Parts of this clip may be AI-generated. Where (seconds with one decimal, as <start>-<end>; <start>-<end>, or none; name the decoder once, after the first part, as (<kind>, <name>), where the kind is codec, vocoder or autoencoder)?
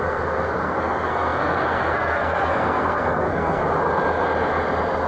0.0-3.6 (codec, SNAC)